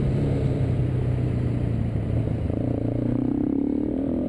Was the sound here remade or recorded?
remade